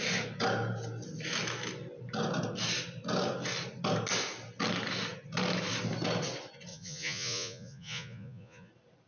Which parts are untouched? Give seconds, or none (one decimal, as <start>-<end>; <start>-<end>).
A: 0.0-6.7; 8.7-9.1